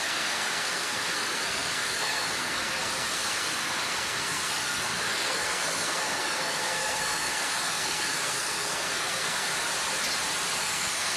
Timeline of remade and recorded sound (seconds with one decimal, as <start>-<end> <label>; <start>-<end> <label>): 0.0-9.5 remade; 9.5-10.6 recorded; 10.6-11.2 remade